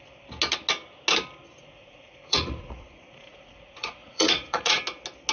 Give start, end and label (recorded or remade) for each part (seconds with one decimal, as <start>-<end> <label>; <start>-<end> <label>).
0.0-1.6 recorded; 1.6-4.8 remade; 4.8-5.3 recorded